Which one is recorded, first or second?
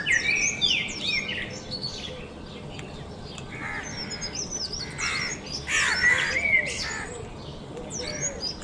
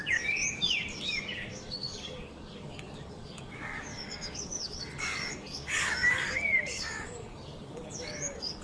first